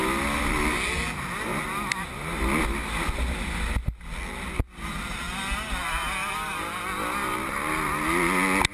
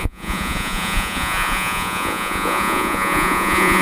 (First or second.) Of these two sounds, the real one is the first